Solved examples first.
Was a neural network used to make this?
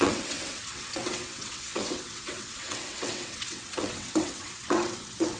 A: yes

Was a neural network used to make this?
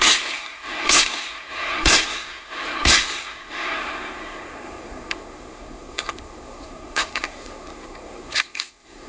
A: yes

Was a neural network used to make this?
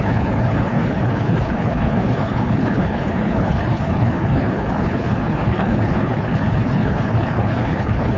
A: yes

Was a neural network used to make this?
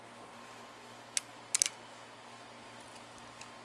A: no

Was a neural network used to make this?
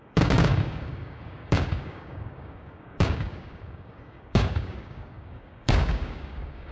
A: yes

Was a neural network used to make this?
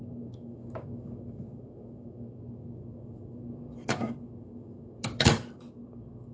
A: yes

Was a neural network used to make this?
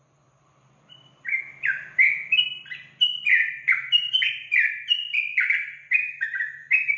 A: no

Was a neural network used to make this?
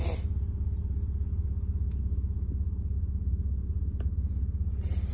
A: no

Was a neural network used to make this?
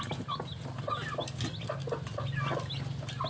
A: no